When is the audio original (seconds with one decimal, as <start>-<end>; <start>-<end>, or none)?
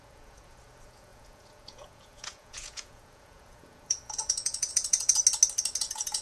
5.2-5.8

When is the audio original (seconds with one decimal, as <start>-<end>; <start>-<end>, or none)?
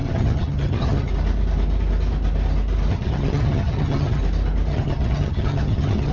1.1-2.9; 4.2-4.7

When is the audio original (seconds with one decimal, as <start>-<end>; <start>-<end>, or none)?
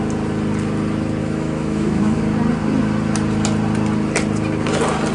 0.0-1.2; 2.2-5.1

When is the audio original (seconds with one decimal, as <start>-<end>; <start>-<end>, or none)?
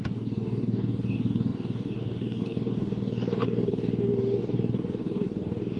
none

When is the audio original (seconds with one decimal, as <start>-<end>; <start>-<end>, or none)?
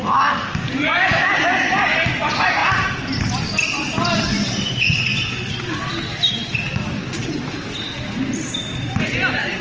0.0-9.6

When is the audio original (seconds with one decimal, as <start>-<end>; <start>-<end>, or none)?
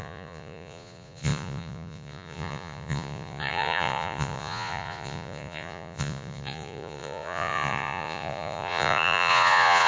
none